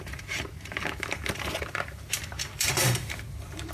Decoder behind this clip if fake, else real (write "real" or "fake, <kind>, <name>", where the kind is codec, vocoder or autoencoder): fake, vocoder, BigVGAN v2